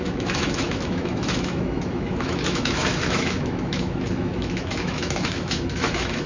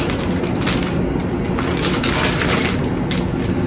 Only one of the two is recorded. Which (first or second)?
second